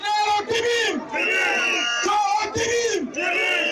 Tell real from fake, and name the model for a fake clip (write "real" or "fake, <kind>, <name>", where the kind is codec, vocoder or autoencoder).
real